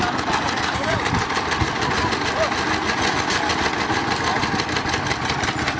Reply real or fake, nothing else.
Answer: real